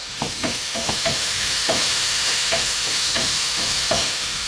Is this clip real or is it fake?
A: fake